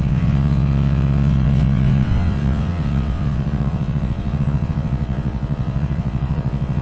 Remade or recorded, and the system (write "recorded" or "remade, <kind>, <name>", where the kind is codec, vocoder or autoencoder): remade, vocoder, WaveNeXt